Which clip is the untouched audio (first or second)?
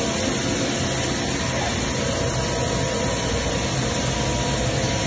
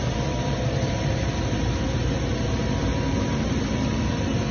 first